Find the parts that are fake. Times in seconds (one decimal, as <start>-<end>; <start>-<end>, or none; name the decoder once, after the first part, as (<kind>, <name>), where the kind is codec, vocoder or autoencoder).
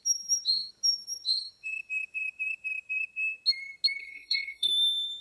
4.0-4.7 (codec, SNAC)